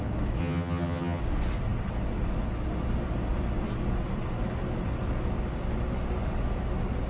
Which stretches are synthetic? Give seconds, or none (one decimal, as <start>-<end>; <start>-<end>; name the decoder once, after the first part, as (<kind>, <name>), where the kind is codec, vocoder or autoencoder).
0.4-1.2 (vocoder, HiFi-GAN)